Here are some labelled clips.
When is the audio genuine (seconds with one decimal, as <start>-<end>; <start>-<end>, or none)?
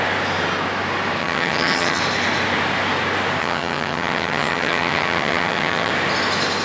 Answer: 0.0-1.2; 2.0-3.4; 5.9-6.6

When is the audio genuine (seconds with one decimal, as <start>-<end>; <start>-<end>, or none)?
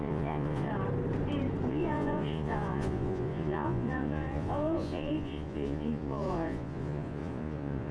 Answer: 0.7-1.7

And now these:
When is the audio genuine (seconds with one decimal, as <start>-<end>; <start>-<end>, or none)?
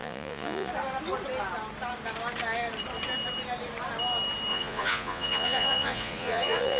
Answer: 0.7-4.5